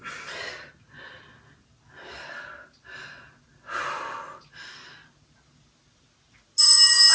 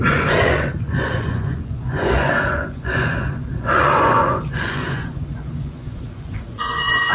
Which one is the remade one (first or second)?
second